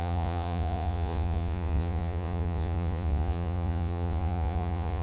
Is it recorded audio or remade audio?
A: remade